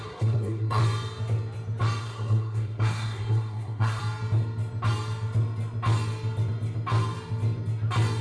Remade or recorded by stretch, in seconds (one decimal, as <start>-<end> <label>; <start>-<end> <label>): 0.0-0.8 remade; 0.8-2.0 recorded; 2.0-4.0 remade; 4.0-8.2 recorded